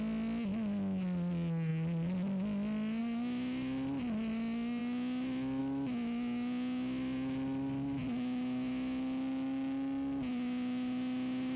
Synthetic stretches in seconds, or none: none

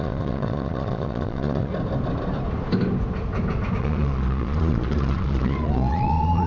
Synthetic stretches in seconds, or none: 0.0-1.7 (vocoder, Vocos); 3.8-6.5